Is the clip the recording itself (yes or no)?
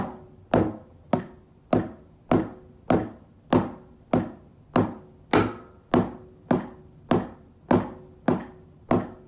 yes